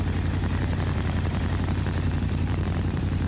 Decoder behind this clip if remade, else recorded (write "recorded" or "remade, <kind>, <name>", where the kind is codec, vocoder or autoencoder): remade, vocoder, BigVGAN v2